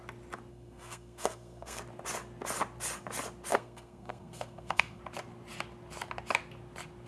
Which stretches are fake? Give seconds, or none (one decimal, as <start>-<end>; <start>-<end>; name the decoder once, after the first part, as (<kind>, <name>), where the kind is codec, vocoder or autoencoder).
0.5-1.8 (codec, SNAC); 3.5-5.0